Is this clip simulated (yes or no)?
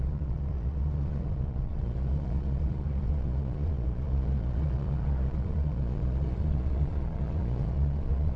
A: yes